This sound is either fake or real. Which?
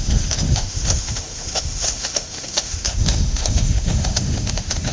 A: fake